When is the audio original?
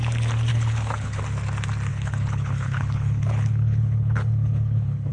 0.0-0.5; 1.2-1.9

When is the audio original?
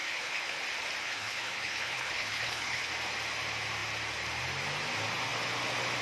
0.6-1.0; 2.9-6.0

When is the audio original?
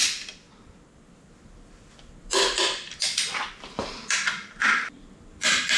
0.0-5.8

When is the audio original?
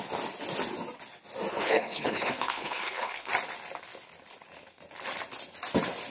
0.0-1.5; 3.3-6.1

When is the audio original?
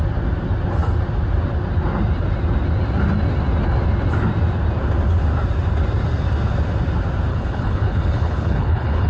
0.0-7.3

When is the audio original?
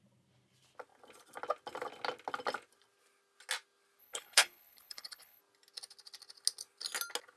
0.0-4.0; 5.4-7.4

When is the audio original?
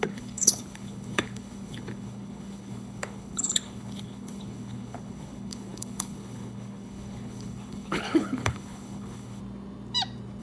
9.4-10.4